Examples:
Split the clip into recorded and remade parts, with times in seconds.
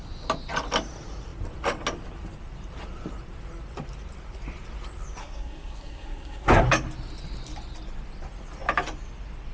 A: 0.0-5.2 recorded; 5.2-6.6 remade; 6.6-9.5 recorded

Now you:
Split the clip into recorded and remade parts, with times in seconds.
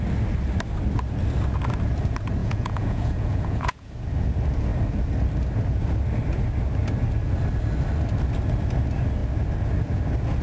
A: 0.0-2.4 recorded; 2.4-3.9 remade; 3.9-10.4 recorded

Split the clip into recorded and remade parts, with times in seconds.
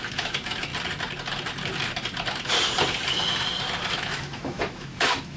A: 0.0-0.7 remade; 0.7-3.9 recorded; 3.9-5.4 remade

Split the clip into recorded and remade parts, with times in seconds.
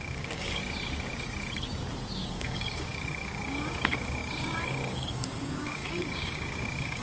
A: 0.0-0.6 remade; 0.6-2.3 recorded; 2.3-7.0 remade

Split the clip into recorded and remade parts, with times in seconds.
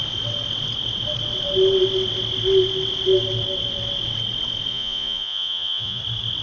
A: 0.0-4.7 recorded; 4.7-6.0 remade; 6.0-6.4 recorded